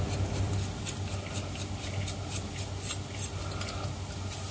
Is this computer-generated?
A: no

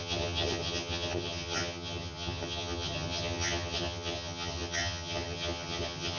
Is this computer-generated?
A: yes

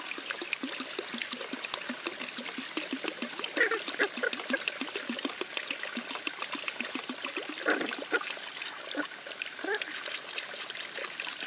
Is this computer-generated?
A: no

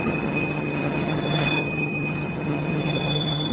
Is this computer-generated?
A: yes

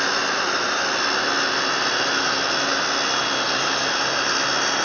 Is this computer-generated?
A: no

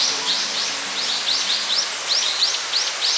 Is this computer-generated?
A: no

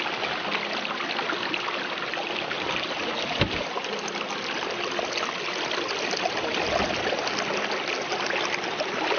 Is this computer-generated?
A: no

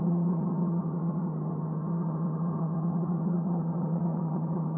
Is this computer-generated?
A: yes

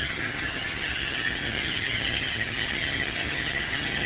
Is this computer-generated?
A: yes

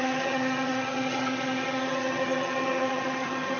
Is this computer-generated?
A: yes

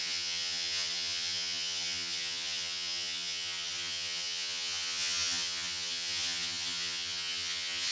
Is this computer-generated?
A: yes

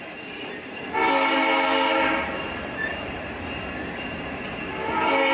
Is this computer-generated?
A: no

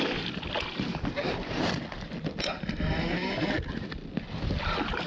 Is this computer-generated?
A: no